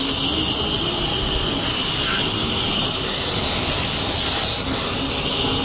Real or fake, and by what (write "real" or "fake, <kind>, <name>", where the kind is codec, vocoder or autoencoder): real